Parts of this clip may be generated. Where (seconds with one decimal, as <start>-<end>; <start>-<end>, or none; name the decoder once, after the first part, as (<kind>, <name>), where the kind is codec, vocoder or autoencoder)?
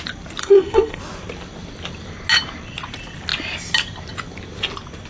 0.4-1.0 (codec, SNAC)